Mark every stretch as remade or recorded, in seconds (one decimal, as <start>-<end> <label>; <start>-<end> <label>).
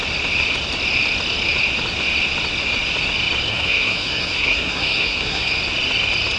0.0-3.5 recorded; 3.5-5.5 remade; 5.5-6.4 recorded